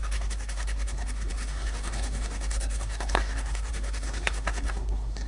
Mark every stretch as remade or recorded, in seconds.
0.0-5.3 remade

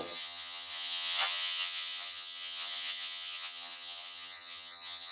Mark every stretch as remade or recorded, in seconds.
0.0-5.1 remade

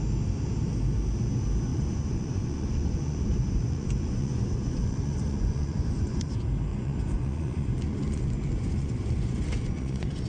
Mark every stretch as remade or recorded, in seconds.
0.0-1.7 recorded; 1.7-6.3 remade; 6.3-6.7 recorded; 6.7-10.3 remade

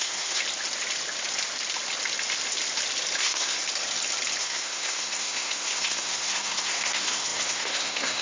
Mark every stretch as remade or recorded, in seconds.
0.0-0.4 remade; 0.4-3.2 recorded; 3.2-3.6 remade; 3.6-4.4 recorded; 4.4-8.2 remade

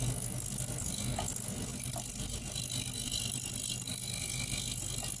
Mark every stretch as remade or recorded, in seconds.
0.0-1.7 recorded; 1.7-4.8 remade; 4.8-5.2 recorded